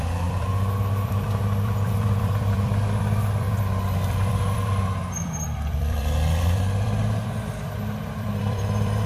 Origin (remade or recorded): remade